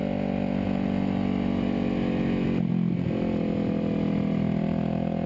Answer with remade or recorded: recorded